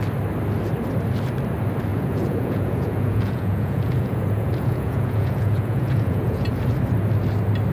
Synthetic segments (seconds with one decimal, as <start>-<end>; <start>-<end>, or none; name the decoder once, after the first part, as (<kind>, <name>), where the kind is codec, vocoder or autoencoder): 1.9-6.5 (vocoder, Vocos)